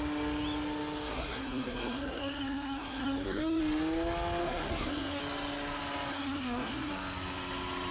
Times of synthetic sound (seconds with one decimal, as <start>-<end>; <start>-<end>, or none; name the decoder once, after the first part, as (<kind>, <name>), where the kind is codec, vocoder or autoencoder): 1.1-3.6 (codec, SNAC); 4.4-5.2; 6.1-6.9